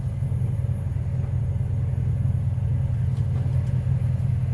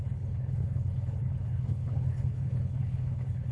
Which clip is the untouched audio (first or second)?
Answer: first